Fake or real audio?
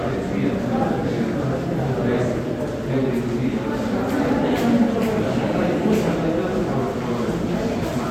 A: real